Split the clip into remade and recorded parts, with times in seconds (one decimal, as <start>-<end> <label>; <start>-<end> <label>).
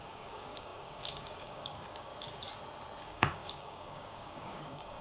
0.0-2.1 remade; 2.1-3.0 recorded; 3.0-5.0 remade